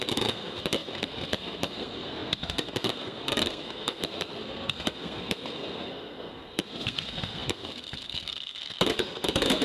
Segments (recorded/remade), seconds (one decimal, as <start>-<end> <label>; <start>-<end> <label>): 0.0-9.6 remade

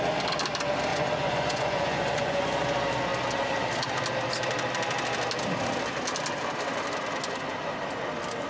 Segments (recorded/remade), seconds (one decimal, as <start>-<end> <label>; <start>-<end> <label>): 0.0-0.9 recorded; 0.9-2.5 remade; 2.5-8.5 recorded